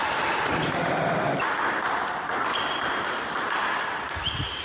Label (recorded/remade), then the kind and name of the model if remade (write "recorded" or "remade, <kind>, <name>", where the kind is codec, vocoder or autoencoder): recorded